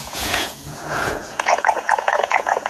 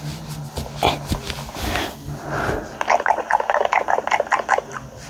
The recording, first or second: second